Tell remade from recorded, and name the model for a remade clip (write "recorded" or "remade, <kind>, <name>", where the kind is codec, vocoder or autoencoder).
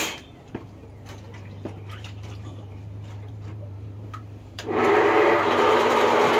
remade, vocoder, BigVGAN v2